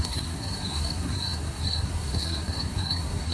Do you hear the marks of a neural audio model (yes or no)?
yes